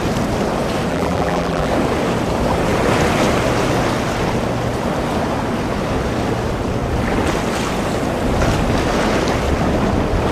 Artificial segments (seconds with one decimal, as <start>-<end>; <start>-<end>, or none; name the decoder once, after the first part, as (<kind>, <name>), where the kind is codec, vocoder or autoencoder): 0.9-1.7 (vocoder, BigVGAN v2)